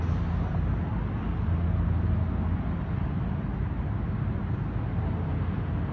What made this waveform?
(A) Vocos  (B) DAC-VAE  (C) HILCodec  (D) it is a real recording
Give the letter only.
D